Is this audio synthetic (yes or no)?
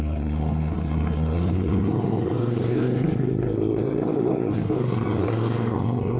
yes